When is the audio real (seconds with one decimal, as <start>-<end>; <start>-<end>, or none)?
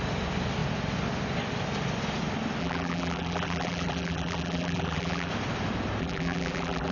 0.0-2.6; 5.3-6.0